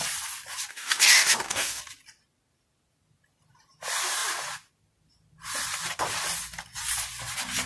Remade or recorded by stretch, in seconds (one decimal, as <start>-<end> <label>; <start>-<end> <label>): 0.0-0.7 recorded; 0.7-1.8 remade; 1.8-7.7 recorded